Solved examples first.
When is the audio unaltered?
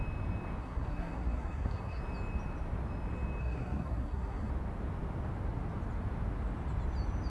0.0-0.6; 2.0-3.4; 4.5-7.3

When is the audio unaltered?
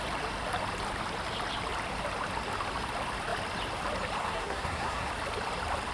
0.0-4.2; 5.1-5.9